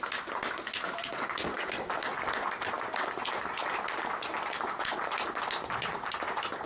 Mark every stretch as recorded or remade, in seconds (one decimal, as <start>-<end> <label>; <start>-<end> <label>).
0.0-6.7 recorded

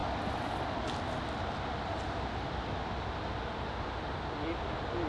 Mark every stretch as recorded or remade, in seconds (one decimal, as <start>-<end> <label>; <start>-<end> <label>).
0.0-5.1 recorded

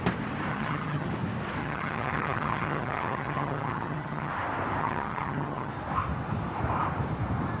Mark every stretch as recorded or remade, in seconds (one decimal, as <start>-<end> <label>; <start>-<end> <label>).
0.0-0.5 recorded; 0.5-1.1 remade; 1.1-1.6 recorded; 1.6-4.3 remade; 4.3-4.8 recorded; 4.8-5.7 remade; 5.7-7.6 recorded

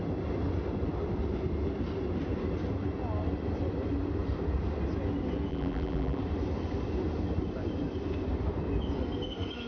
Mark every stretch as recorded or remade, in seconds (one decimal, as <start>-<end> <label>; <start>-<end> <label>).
0.0-5.5 recorded; 5.5-6.2 remade; 6.2-9.7 recorded